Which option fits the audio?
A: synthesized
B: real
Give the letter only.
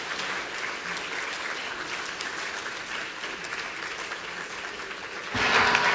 B